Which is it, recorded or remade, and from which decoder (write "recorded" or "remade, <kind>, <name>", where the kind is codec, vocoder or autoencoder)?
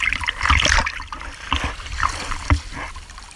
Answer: recorded